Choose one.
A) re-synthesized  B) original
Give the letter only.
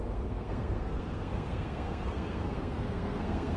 A